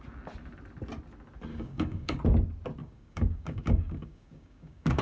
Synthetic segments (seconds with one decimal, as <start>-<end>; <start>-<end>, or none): 1.5-2.2; 2.8-5.0